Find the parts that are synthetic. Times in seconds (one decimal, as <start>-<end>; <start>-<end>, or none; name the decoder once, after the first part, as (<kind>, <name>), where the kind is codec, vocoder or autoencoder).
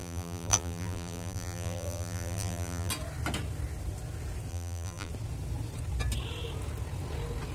0.0-2.9 (vocoder, BigVGAN v2); 4.5-5.1